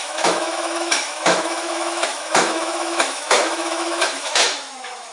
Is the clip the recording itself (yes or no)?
no